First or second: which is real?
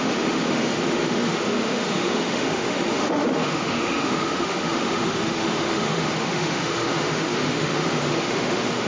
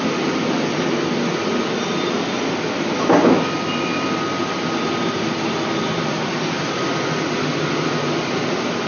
second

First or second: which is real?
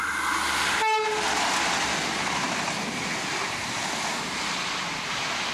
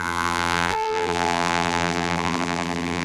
first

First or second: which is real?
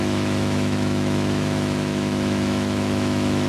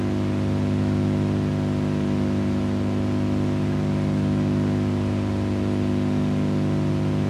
second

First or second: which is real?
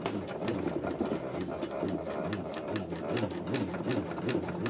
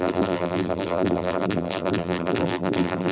first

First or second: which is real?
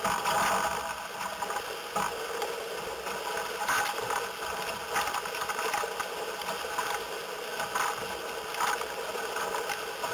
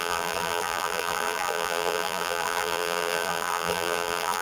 first